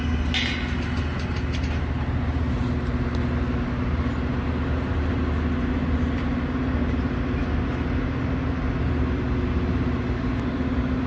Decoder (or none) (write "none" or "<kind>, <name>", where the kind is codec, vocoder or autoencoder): none